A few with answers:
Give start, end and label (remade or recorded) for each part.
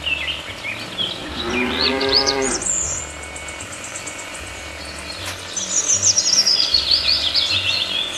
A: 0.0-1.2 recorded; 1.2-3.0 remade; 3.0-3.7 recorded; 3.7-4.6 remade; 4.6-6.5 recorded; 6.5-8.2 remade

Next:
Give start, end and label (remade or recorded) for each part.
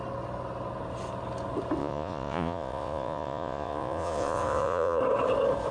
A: 0.0-1.8 recorded; 1.8-5.0 remade; 5.0-5.7 recorded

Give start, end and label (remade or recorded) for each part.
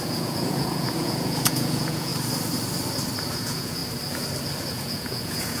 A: 0.0-2.1 remade; 2.1-3.3 recorded; 3.3-3.8 remade; 3.8-4.7 recorded; 4.7-5.6 remade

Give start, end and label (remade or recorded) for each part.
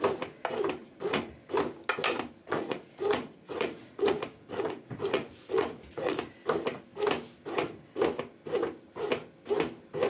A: 0.0-0.8 recorded; 0.8-1.3 remade; 1.3-2.4 recorded; 2.4-6.4 remade; 6.4-10.1 recorded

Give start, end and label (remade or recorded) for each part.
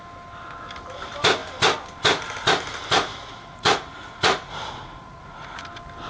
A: 0.0-3.1 recorded; 3.1-5.6 remade; 5.6-6.1 recorded